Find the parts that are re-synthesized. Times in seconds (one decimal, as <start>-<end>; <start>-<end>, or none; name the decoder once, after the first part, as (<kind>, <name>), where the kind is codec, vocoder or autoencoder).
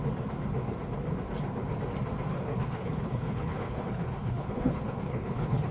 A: 2.3-5.7 (codec, HILCodec)